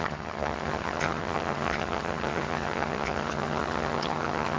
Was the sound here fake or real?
fake